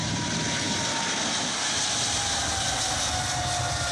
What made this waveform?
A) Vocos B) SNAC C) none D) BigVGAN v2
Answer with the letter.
C